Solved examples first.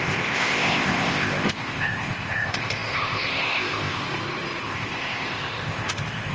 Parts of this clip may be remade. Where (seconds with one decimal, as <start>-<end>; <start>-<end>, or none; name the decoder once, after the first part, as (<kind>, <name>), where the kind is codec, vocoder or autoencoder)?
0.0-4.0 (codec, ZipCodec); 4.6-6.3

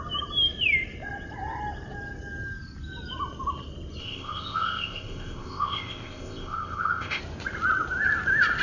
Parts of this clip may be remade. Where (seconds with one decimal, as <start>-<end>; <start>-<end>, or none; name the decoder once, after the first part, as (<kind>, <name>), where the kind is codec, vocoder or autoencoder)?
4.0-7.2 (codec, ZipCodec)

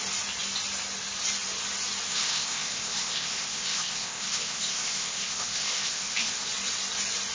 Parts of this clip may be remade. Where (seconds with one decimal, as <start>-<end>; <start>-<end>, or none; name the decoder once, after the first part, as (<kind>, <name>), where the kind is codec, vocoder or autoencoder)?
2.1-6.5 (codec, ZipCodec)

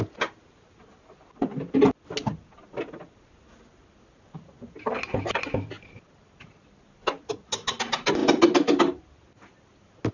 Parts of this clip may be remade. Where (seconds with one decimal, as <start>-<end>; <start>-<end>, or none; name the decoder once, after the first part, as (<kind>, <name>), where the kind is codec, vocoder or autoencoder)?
none

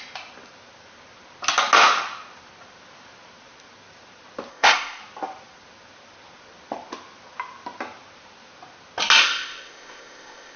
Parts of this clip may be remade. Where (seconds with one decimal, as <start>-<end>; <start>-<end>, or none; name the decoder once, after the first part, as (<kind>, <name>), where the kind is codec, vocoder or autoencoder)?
4.5-5.0 (codec, ZipCodec); 9.2-10.6

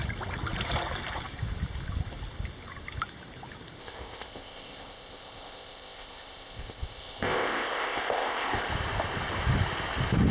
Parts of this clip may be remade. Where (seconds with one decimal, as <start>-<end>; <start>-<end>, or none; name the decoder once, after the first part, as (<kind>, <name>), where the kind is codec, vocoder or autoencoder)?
3.8-8.7 (codec, ZipCodec)

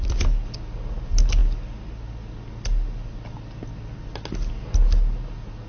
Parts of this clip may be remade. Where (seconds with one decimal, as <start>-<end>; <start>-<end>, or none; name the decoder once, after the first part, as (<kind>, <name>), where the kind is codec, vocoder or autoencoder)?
none